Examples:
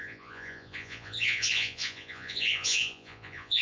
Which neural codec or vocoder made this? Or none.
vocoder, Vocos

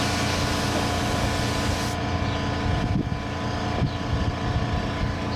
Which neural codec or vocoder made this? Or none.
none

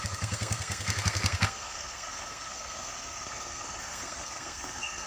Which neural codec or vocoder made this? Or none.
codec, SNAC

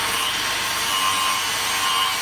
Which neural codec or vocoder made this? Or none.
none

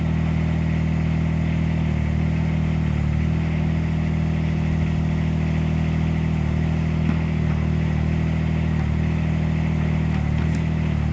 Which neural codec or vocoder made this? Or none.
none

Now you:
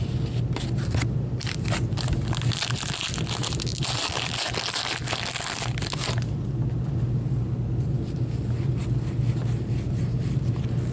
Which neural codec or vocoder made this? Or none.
none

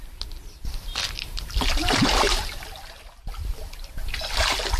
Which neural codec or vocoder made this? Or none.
none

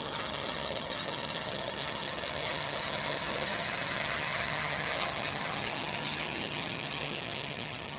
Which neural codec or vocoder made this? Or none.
vocoder, HiFi-GAN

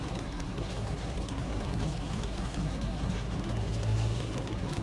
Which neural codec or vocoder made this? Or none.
codec, SNAC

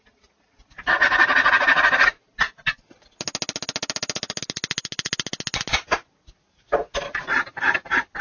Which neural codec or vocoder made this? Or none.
none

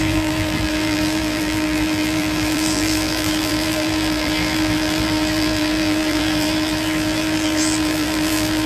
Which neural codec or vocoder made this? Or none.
vocoder, BigVGAN v2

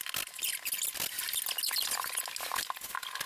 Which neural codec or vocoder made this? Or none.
none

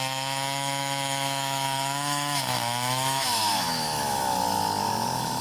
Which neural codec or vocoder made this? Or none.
autoencoder, DAC-VAE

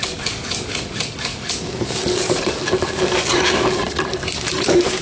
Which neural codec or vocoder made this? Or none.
codec, DAC